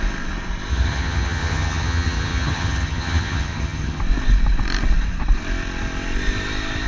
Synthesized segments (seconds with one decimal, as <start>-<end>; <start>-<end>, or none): 0.7-4.0